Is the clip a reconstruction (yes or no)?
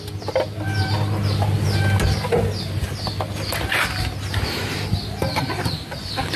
no